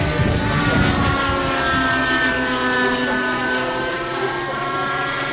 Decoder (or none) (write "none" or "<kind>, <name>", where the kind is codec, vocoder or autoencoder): none